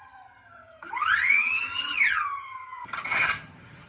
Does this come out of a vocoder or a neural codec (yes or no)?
yes